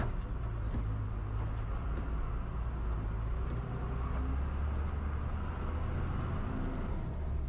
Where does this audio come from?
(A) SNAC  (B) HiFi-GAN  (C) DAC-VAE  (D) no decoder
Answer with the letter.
D